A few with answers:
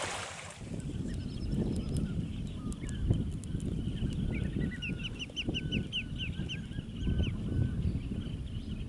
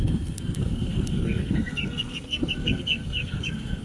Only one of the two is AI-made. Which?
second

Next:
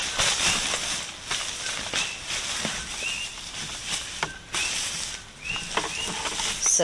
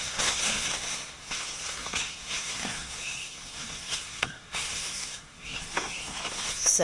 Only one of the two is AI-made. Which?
second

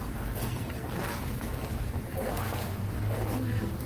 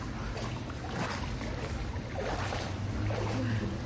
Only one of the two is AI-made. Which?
first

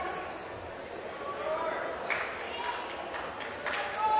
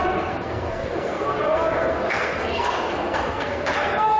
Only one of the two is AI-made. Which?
second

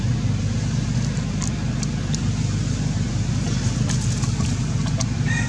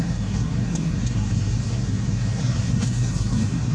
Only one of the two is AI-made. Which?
second